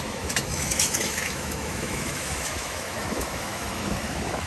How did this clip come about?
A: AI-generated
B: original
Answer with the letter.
A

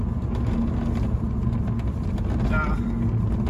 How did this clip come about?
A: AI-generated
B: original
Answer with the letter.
B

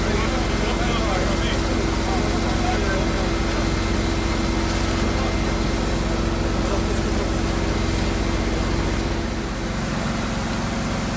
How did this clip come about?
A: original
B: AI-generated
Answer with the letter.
A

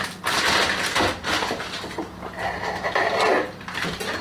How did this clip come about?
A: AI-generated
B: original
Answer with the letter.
B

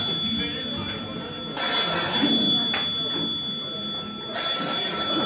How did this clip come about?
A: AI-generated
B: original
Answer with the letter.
B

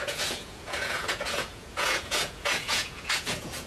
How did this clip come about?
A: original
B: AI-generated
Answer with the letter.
B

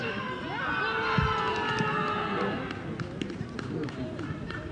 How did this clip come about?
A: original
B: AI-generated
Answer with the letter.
A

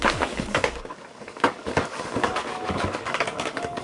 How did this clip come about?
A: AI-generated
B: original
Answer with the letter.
A